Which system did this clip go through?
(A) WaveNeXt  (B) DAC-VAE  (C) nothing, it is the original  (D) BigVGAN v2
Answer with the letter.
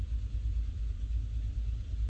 C